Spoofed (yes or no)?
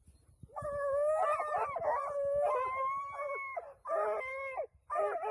no